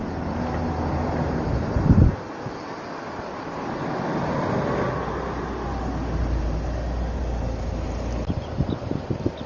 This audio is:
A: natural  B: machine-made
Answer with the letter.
A